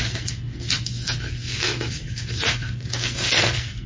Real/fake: fake